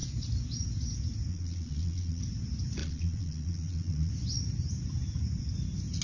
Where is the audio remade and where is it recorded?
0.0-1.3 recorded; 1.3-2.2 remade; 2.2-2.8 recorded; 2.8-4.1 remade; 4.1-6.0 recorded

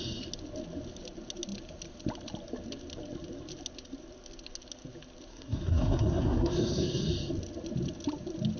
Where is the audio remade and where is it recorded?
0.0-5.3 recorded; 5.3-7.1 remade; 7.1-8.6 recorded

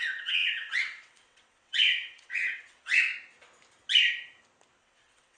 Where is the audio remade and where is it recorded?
0.0-3.1 remade; 3.1-4.8 recorded; 4.8-5.4 remade

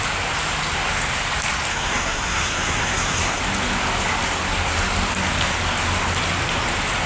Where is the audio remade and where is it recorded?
0.0-1.7 recorded; 1.7-3.4 remade; 3.4-7.1 recorded